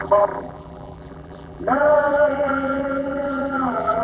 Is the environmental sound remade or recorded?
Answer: remade